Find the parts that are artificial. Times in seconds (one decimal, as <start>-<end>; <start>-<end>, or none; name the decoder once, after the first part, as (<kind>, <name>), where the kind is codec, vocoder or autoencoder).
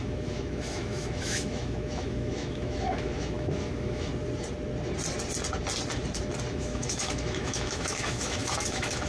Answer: 0.0-4.1 (autoencoder, DAC-VAE); 6.5-9.1